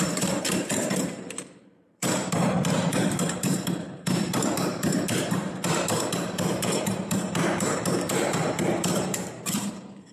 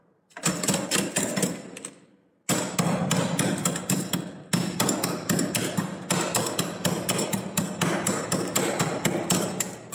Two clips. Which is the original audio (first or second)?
second